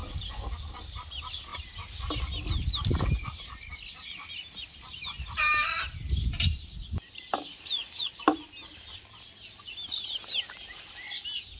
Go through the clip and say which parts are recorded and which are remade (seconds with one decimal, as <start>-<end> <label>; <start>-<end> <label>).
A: 0.0-11.6 recorded